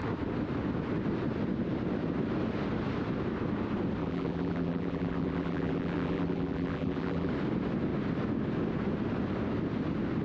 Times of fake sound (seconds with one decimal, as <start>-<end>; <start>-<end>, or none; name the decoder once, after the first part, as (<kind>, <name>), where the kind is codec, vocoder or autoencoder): 4.0-7.3 (vocoder, BigVGAN v2)